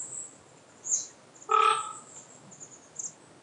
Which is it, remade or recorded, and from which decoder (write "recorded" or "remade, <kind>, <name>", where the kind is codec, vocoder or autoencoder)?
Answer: recorded